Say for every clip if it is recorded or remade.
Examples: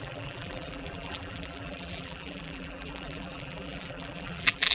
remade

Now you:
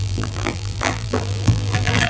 remade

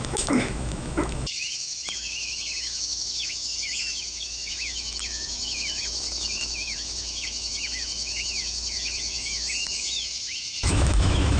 remade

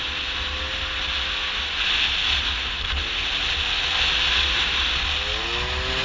recorded